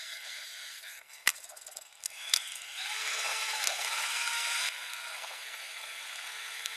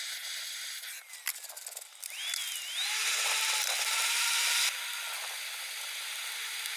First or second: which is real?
second